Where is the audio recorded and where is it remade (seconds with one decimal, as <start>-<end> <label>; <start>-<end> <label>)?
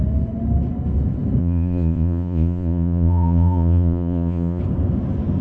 0.0-1.4 recorded; 1.4-4.6 remade; 4.6-5.4 recorded